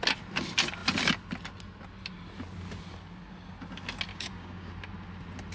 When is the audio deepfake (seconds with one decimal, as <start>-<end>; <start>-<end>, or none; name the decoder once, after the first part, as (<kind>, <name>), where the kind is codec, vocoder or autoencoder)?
4.1-4.7 (codec, DAC)